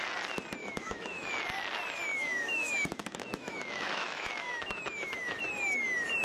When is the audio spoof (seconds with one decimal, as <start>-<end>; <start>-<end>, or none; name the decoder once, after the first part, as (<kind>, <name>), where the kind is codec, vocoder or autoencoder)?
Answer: 0.6-1.4 (autoencoder, DAC-VAE); 2.1-5.4